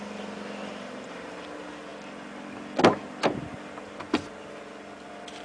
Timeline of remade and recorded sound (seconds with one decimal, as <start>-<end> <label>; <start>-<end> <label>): 0.0-5.4 recorded